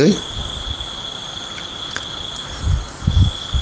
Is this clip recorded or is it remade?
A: recorded